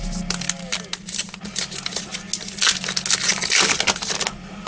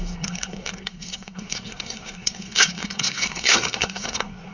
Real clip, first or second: first